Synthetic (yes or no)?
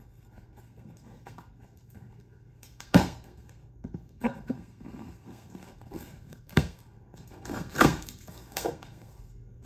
yes